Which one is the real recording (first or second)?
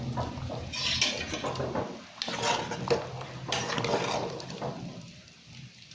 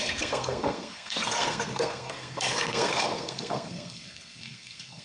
first